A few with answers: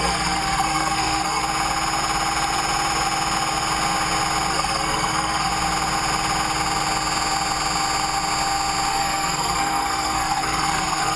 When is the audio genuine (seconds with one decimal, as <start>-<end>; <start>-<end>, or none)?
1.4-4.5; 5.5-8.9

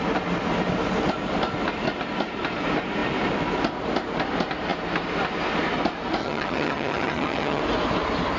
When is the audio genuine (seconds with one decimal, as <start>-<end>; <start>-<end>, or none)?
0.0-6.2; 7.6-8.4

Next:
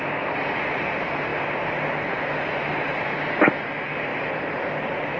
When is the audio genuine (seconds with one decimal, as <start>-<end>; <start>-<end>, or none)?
0.0-5.2

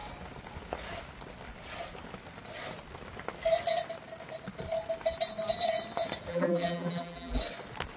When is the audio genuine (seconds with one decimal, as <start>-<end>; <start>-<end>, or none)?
0.0-6.3; 7.4-8.0

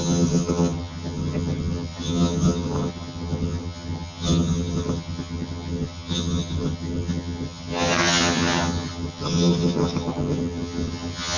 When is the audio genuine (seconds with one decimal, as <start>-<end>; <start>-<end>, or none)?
none